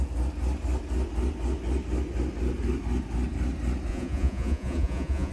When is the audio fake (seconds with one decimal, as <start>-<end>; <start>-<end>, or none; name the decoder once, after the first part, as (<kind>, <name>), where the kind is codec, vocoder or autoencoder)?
3.9-5.3 (vocoder, Vocos)